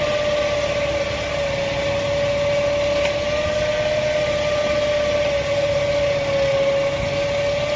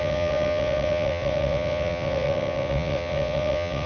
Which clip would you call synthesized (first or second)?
second